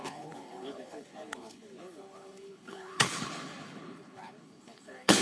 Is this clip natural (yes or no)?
no